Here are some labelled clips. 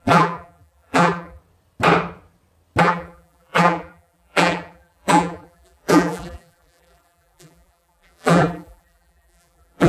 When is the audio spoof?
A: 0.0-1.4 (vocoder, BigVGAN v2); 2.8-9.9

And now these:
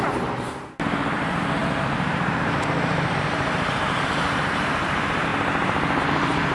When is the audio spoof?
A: 0.0-5.3 (vocoder, BigVGAN v2); 6.0-6.5